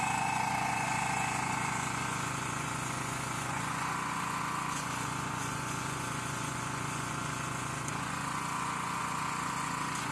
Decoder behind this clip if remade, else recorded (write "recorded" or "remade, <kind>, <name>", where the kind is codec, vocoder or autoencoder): remade, vocoder, Vocos